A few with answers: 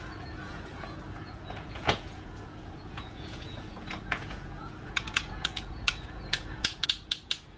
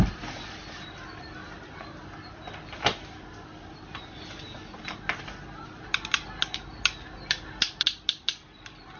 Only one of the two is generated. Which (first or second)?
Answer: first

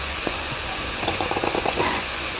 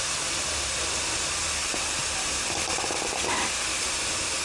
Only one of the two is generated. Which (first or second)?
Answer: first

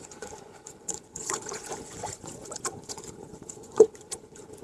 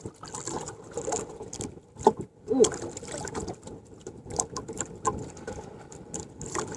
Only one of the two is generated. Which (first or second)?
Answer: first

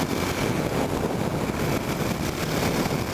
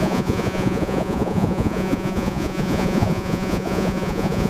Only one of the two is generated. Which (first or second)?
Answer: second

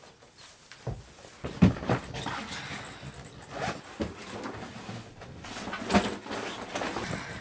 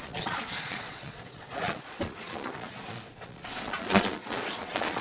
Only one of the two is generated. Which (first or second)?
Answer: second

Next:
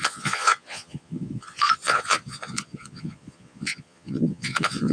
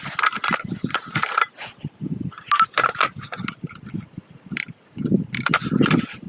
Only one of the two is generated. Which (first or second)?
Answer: first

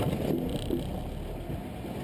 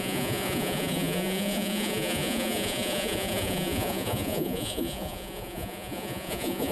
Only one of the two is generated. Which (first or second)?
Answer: second